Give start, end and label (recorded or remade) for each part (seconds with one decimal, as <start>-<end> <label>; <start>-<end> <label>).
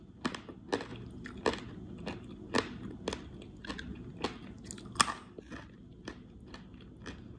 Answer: 0.0-7.4 recorded